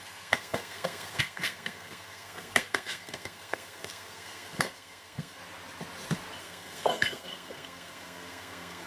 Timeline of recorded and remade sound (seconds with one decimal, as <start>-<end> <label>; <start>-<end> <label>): 0.0-5.4 remade; 5.4-6.4 recorded; 6.4-8.9 remade